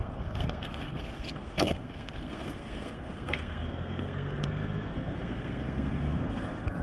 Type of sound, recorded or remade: remade